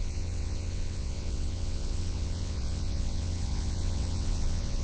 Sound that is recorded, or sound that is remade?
remade